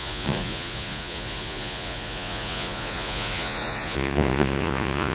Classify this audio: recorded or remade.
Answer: remade